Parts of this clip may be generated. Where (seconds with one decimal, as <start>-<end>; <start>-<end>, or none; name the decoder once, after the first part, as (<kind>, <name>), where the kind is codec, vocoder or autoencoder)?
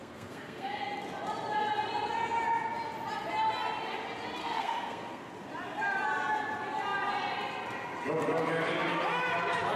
0.0-0.8 (codec, SNAC); 4.4-5.3